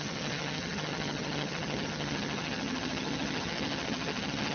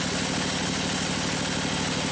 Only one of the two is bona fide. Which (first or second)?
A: second